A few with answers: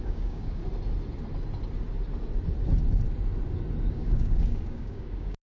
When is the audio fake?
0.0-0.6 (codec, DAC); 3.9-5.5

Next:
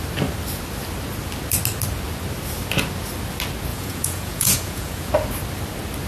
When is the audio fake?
3.7-5.1 (vocoder, Vocos)

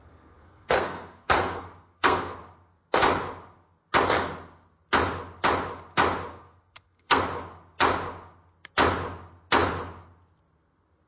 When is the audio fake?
0.0-2.4 (codec, SNAC); 6.3-7.2